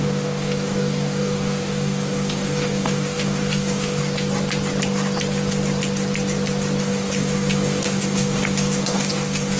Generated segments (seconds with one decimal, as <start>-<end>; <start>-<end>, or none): 0.0-4.0; 6.8-9.6